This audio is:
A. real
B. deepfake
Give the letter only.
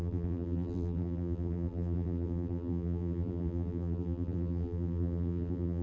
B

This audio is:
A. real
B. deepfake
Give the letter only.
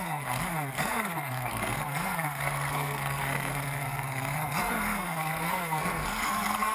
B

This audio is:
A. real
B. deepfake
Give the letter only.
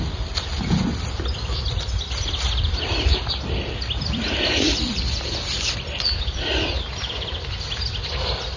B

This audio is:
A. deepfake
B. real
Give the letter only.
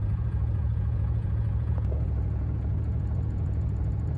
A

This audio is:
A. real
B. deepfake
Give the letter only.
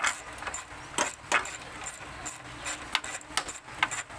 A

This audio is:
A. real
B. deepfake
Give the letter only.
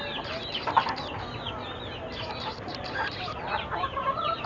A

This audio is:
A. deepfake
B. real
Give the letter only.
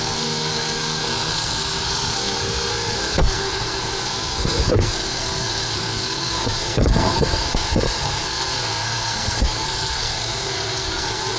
A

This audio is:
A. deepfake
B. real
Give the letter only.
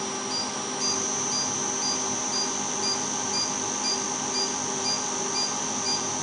B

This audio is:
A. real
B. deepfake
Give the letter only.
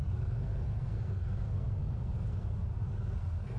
B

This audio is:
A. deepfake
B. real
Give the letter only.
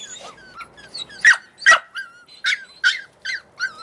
B